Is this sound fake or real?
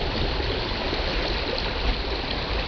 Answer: real